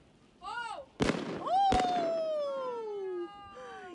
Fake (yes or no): no